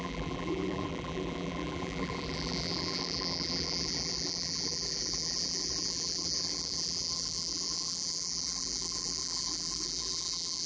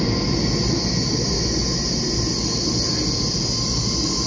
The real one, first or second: second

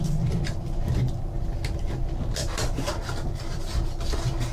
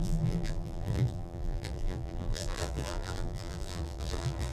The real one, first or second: first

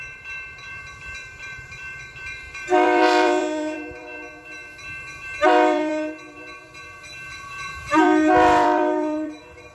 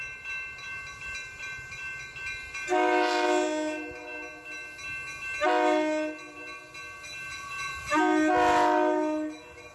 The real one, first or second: second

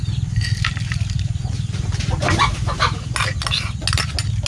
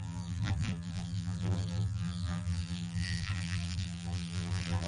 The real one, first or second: first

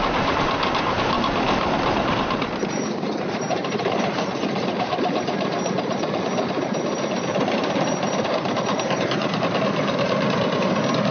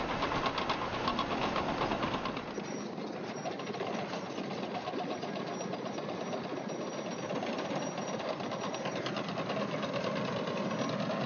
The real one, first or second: second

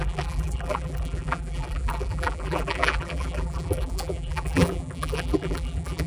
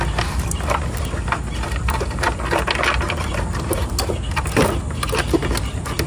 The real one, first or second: second